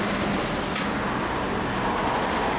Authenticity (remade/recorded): recorded